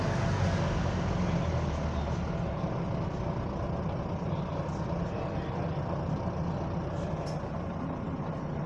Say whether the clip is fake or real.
real